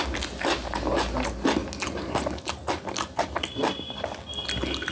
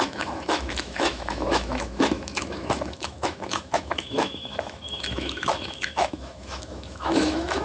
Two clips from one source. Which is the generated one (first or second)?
second